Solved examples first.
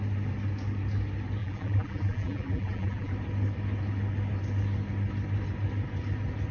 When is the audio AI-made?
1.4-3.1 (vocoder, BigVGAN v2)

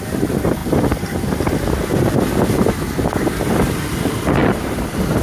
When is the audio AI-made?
4.4-5.2 (vocoder, BigVGAN v2)

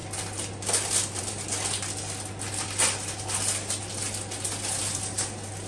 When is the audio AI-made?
none

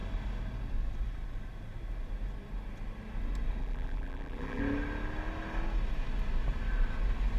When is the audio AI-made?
3.6-4.6 (vocoder, BigVGAN v2)

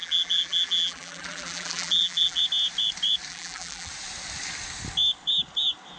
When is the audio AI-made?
0.0-2.4 (vocoder, BigVGAN v2); 3.3-3.9